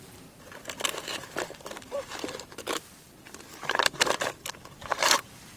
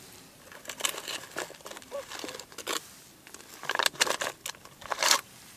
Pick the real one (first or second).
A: second